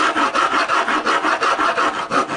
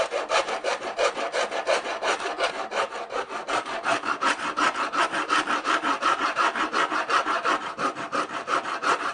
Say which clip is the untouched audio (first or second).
first